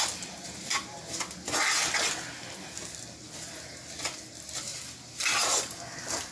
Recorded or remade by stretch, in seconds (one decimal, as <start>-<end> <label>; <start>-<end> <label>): 0.0-6.3 recorded